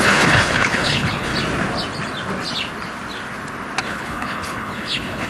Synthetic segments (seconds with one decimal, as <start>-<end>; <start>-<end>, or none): 0.0-1.3; 3.9-5.3